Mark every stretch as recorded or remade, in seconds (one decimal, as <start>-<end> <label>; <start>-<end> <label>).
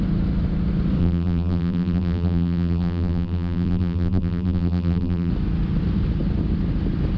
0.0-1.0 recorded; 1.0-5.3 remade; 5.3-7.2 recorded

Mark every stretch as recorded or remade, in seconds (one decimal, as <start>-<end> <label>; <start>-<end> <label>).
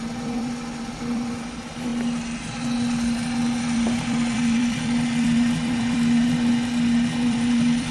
0.0-1.9 remade; 1.9-3.6 recorded; 3.6-6.5 remade; 6.5-7.1 recorded; 7.1-7.9 remade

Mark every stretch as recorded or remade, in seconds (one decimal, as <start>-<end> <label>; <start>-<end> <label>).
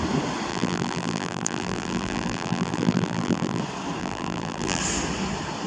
0.0-0.5 recorded; 0.5-3.6 remade; 3.6-4.0 recorded; 4.0-4.8 remade; 4.8-5.7 recorded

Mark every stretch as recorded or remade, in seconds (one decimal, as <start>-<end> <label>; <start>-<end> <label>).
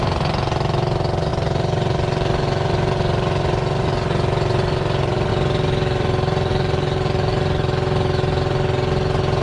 0.0-1.3 recorded; 1.3-5.3 remade; 5.3-6.5 recorded; 6.5-7.4 remade; 7.4-9.4 recorded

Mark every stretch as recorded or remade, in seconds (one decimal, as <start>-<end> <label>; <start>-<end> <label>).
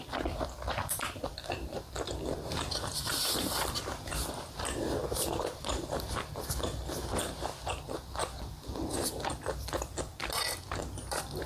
0.0-10.1 remade; 10.1-10.8 recorded; 10.8-11.5 remade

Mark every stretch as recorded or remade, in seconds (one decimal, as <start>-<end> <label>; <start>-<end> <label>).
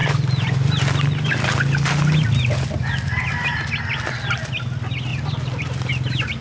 0.0-6.4 recorded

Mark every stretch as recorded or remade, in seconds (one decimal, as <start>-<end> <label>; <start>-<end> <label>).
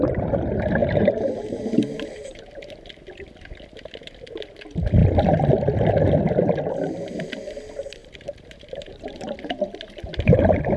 0.0-0.8 recorded; 0.8-2.7 remade; 2.7-8.0 recorded; 8.0-10.4 remade; 10.4-10.8 recorded